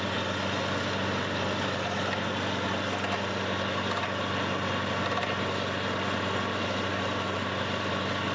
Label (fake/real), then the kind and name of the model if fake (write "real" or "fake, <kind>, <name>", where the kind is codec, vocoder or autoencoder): real